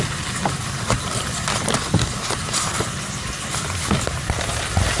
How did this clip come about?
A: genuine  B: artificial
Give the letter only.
A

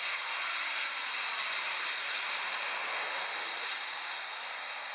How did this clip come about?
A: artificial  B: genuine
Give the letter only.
B